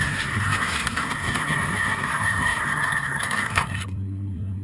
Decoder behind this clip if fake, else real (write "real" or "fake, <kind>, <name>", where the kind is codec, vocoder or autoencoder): fake, codec, SNAC